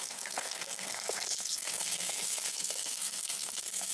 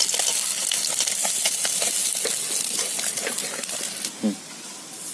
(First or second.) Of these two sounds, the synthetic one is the first